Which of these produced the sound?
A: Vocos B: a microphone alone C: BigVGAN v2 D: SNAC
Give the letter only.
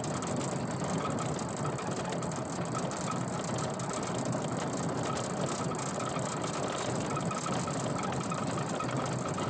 B